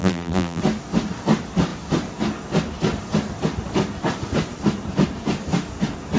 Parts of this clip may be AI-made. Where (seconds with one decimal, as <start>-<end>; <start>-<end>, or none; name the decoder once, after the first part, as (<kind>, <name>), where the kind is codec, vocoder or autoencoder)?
0.0-0.6 (vocoder, BigVGAN v2)